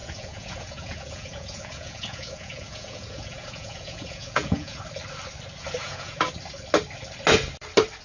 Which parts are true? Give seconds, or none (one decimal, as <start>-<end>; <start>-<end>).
4.8-5.8; 6.3-8.0